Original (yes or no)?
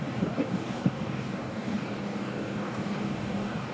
no